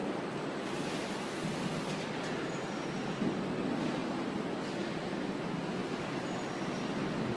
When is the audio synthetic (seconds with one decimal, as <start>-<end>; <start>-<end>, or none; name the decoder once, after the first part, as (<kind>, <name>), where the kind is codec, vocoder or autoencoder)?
0.0-1.1 (vocoder, BigVGAN v2); 5.8-6.9

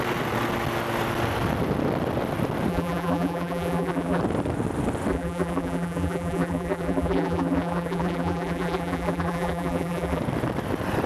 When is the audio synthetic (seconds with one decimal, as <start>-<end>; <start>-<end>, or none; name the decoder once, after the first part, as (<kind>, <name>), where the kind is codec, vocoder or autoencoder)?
2.7-4.2 (vocoder, BigVGAN v2); 5.1-10.2